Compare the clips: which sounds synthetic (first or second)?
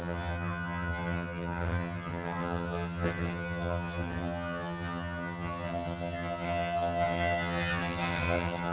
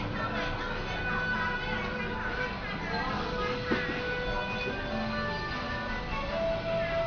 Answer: first